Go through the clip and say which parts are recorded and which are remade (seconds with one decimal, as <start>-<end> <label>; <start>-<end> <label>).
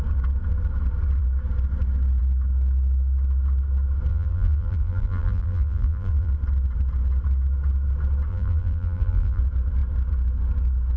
0.0-4.1 recorded; 4.1-6.3 remade; 6.3-8.3 recorded; 8.3-9.4 remade; 9.4-11.0 recorded